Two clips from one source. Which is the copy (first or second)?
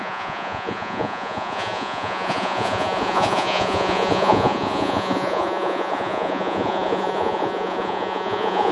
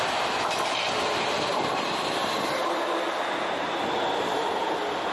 first